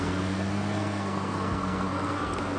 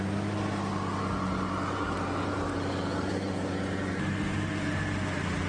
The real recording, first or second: second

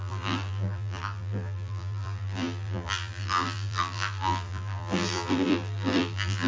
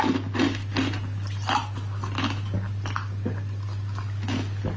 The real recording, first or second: second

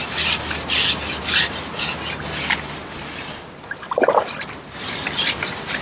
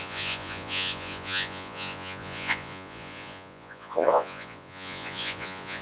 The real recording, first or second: first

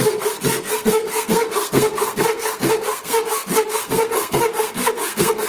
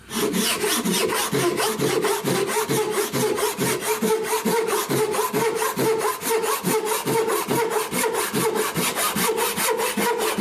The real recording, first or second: second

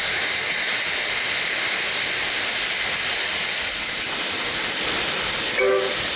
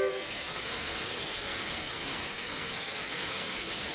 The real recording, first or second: first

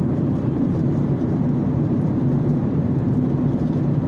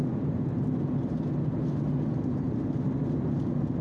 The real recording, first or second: second